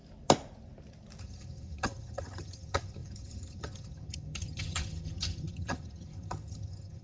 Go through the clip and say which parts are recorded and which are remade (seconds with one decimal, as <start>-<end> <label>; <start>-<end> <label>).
0.0-1.2 recorded; 1.2-7.0 remade